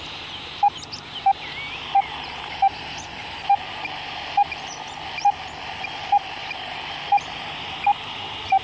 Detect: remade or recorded recorded